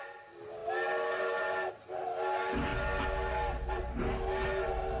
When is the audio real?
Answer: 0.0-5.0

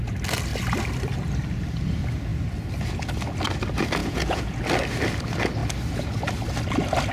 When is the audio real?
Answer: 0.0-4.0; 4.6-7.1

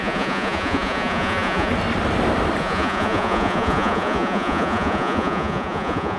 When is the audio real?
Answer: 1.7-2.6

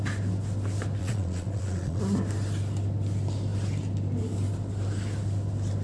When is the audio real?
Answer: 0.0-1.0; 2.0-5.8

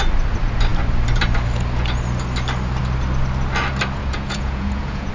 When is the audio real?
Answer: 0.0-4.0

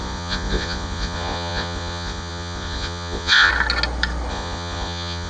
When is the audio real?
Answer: 3.5-4.3

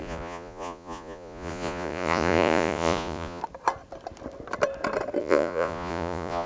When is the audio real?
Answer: 3.4-5.2